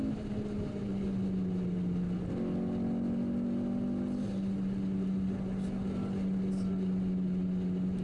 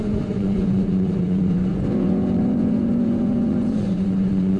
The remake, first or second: second